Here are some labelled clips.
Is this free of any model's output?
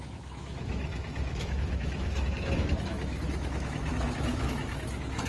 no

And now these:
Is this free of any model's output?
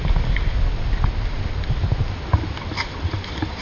yes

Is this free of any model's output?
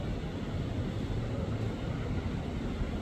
yes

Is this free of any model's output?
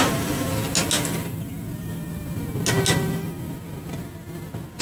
yes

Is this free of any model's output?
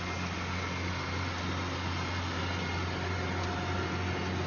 yes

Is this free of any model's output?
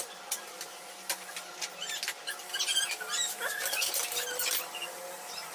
yes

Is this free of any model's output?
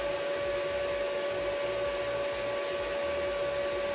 yes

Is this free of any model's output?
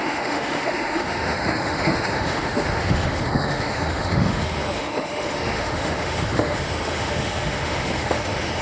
no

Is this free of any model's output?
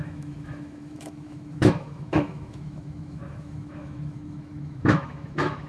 no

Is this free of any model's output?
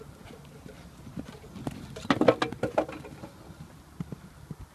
yes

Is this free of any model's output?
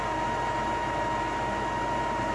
yes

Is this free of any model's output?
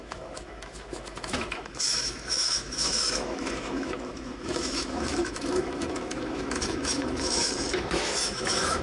no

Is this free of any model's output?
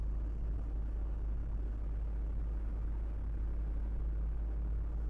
yes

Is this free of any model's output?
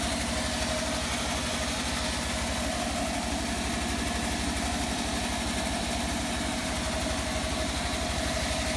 yes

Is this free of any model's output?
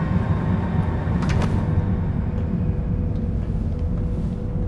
yes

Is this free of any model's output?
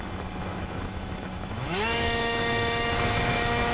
no